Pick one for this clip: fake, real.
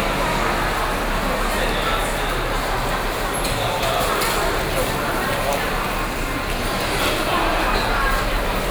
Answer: real